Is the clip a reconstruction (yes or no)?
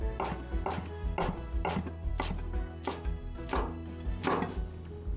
no